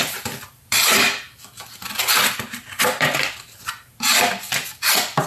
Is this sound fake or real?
fake